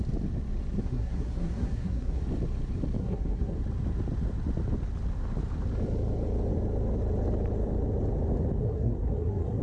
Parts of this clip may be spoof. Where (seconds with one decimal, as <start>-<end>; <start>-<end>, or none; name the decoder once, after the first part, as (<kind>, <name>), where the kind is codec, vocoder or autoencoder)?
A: 0.8-2.2 (codec, SNAC); 3.0-3.6; 8.6-9.6